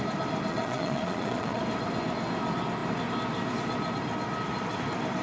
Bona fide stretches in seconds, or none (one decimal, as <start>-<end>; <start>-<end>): 0.0-0.5; 1.6-5.2